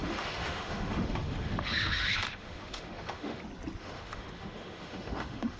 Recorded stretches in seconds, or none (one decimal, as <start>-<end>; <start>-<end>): 3.4-3.8